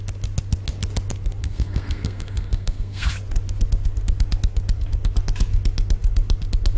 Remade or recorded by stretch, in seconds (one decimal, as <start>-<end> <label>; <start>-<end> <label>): 0.0-1.4 recorded; 1.4-3.1 remade; 3.1-6.8 recorded